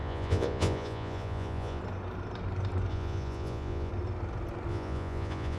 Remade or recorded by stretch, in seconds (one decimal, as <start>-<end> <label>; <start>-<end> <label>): 0.0-1.8 remade; 1.8-2.9 recorded; 2.9-3.9 remade; 3.9-4.7 recorded; 4.7-5.6 remade